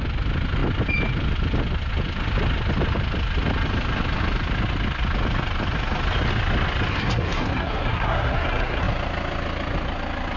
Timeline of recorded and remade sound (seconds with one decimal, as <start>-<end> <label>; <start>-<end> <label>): 0.0-6.9 recorded; 6.9-8.8 remade; 8.8-10.4 recorded